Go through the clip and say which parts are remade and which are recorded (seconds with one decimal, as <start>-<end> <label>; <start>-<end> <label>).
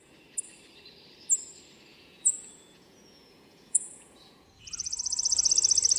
0.0-1.9 recorded; 1.9-5.5 remade; 5.5-6.0 recorded